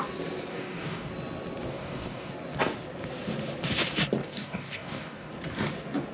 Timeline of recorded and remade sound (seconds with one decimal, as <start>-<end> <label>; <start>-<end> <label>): 0.0-0.5 recorded; 0.5-1.1 remade; 1.1-1.7 recorded; 1.7-2.3 remade; 2.3-4.2 recorded; 4.2-5.3 remade; 5.3-6.1 recorded